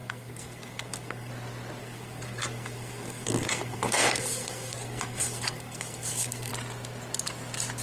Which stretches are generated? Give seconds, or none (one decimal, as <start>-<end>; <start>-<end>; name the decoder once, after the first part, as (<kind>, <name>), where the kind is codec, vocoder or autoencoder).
0.0-1.3 (codec, SNAC); 1.8-6.5